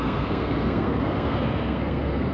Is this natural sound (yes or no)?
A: no